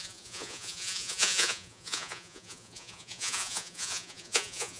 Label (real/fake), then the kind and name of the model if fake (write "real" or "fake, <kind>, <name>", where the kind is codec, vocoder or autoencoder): fake, vocoder, Vocos